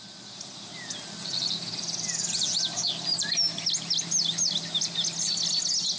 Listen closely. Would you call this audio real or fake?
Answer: real